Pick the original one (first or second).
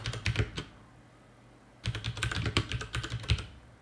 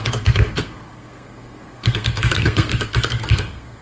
first